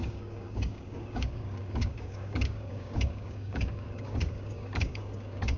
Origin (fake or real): fake